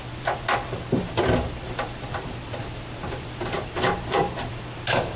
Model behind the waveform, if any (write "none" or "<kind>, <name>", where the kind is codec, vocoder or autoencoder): vocoder, BigVGAN v2